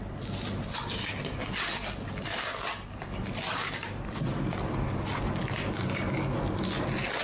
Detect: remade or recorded recorded